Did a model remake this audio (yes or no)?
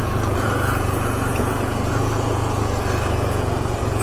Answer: yes